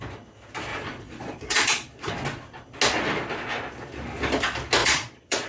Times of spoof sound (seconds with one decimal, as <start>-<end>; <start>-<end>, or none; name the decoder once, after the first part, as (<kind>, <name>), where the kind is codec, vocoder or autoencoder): 0.7-2.1 (vocoder, Vocos); 4.8-5.5